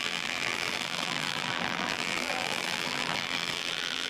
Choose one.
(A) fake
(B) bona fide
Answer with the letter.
A